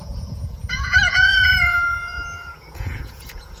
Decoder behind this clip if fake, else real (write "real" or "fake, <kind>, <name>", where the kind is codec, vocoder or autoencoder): fake, vocoder, Vocos